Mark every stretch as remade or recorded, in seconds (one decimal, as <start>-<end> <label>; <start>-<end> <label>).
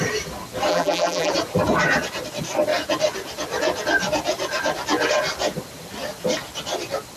0.0-0.7 recorded; 0.7-1.3 remade; 1.3-7.2 recorded